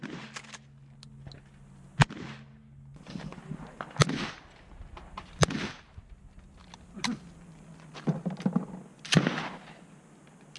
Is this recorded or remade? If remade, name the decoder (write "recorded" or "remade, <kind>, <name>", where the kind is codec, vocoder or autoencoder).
recorded